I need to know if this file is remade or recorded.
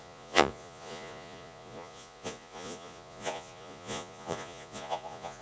remade